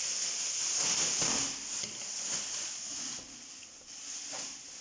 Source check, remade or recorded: recorded